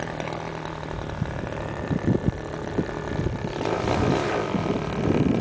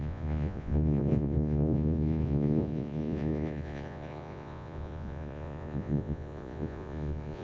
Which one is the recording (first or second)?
first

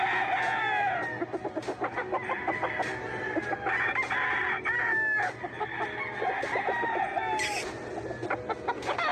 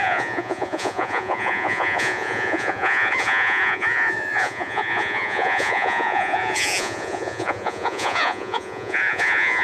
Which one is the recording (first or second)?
first